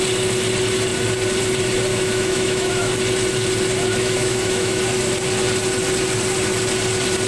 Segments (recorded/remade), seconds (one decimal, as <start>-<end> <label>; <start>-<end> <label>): 0.0-1.9 recorded; 1.9-2.9 remade; 2.9-3.9 recorded; 3.9-4.8 remade; 4.8-7.3 recorded